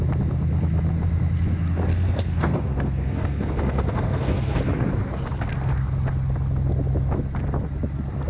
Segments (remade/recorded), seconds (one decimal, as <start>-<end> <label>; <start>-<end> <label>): 0.0-1.9 recorded; 1.9-4.6 remade; 4.6-8.3 recorded